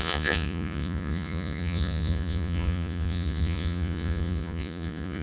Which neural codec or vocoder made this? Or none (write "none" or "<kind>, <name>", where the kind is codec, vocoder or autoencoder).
vocoder, Vocos